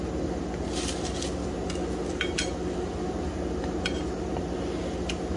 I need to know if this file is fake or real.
real